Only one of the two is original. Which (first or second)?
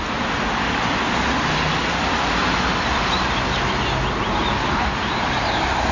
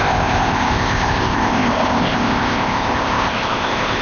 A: first